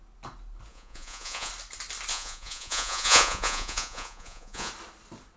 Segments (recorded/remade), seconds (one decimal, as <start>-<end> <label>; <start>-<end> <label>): 0.0-0.7 recorded; 0.7-1.5 remade; 1.5-2.1 recorded; 2.1-4.7 remade; 4.7-5.4 recorded